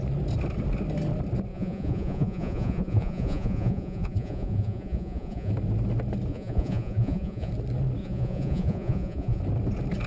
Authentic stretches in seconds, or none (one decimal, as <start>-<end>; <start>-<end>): 0.0-1.5; 5.5-6.3; 7.5-8.0; 9.4-10.1